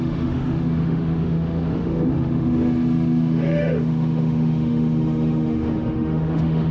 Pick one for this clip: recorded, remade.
remade